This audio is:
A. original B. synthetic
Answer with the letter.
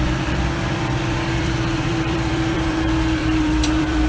B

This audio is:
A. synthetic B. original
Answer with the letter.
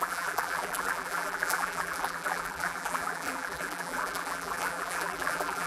A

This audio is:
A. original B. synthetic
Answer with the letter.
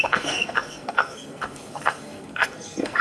B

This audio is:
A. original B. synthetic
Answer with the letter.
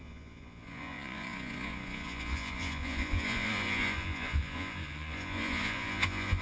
B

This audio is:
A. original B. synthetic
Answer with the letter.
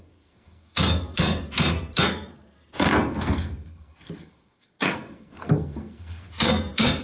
B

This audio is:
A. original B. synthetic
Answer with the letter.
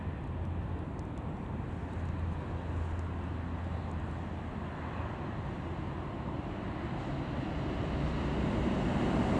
A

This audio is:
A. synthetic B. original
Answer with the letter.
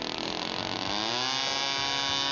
B